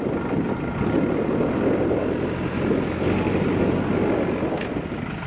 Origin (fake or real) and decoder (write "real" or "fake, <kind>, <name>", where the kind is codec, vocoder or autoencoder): real